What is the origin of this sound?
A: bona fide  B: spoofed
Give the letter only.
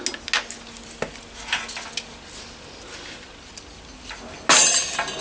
A